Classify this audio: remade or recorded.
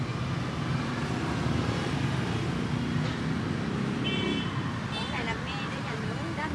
recorded